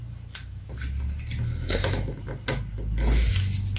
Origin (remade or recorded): recorded